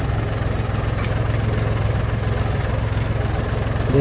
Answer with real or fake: real